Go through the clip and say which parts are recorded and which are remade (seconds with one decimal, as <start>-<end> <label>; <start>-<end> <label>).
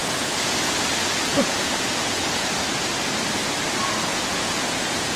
0.0-0.8 remade; 0.8-1.3 recorded; 1.3-2.5 remade; 2.5-4.1 recorded; 4.1-5.2 remade